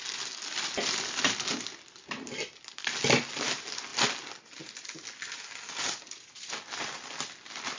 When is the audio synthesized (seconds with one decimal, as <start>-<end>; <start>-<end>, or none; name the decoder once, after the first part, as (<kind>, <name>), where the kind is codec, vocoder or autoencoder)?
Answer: none